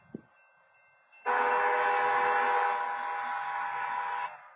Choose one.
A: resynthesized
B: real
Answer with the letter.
B